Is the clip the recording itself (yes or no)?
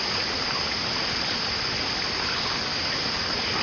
yes